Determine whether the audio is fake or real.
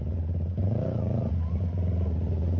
fake